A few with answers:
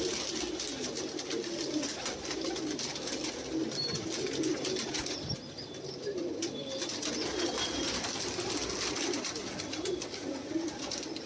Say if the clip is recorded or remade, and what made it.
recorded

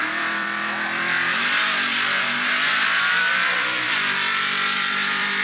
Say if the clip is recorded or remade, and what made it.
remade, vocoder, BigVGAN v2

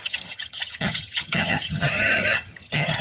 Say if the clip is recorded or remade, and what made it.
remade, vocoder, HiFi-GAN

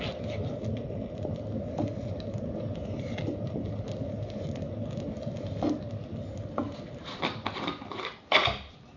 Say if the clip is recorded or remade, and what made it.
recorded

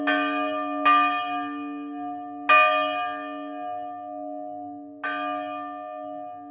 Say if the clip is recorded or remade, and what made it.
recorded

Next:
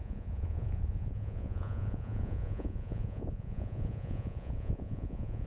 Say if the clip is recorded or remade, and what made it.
remade, vocoder, Vocos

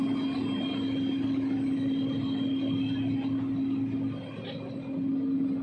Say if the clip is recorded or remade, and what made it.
recorded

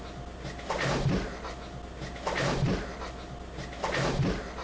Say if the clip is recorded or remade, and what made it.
recorded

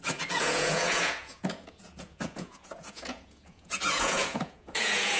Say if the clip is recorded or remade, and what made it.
remade, vocoder, Vocos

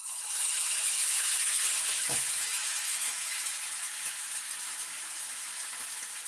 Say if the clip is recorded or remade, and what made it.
remade, autoencoder, DAC-VAE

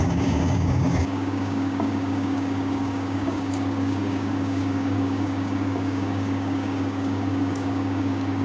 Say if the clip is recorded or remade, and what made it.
remade, codec, DAC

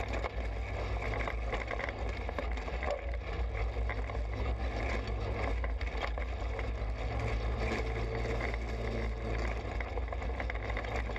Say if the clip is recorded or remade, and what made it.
recorded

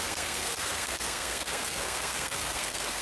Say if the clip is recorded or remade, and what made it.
remade, codec, SNAC